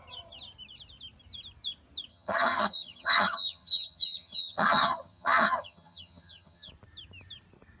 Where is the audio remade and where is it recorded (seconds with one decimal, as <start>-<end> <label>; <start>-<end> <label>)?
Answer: 0.0-2.1 recorded; 2.1-6.7 remade; 6.7-7.8 recorded